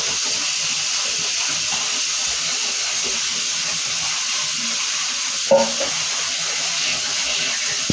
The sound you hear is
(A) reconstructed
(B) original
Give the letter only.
B